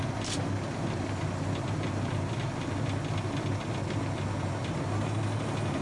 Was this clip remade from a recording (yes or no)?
no